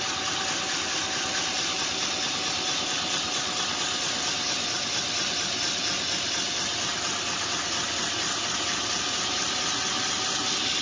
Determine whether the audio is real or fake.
real